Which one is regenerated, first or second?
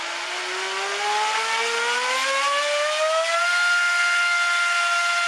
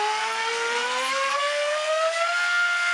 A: second